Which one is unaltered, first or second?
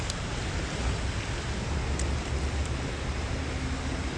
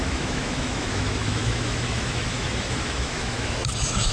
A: first